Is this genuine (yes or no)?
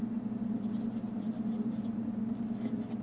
yes